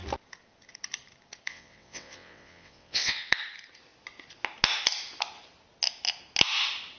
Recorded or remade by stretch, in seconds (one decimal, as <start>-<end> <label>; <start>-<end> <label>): 0.0-1.5 recorded; 1.5-3.3 remade; 3.3-7.0 recorded